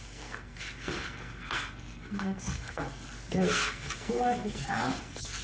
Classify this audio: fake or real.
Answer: fake